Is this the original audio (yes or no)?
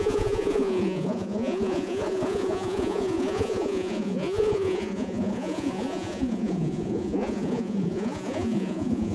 no